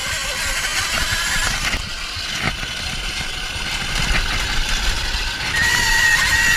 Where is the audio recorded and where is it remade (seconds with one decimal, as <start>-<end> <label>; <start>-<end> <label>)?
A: 0.0-6.6 recorded

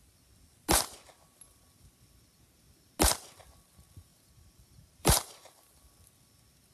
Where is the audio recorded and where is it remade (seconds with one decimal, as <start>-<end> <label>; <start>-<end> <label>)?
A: 0.0-4.1 recorded; 4.1-5.7 remade; 5.7-6.7 recorded

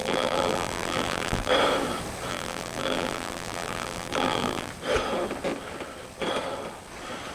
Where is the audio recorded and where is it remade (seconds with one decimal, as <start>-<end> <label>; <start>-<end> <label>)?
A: 0.0-1.5 remade; 1.5-2.3 recorded; 2.3-4.7 remade; 4.7-7.3 recorded

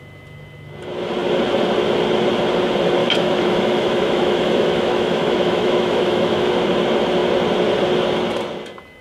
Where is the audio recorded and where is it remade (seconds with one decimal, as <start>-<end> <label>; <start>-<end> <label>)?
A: 0.0-3.0 recorded; 3.0-6.5 remade; 6.5-9.0 recorded

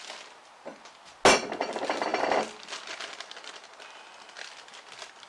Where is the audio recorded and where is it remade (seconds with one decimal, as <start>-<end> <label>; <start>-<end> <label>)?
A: 0.0-5.3 recorded